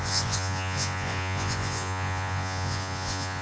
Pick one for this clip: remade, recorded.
remade